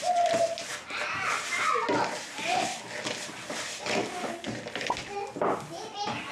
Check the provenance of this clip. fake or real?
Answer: real